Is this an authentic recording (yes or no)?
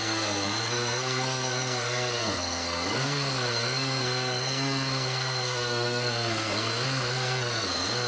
no